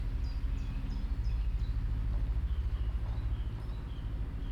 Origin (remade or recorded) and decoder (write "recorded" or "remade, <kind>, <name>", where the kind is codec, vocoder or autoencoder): recorded